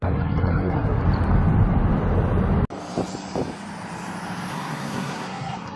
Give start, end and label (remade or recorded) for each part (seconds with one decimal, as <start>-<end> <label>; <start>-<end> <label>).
0.0-1.0 remade; 1.0-4.5 recorded; 4.5-5.8 remade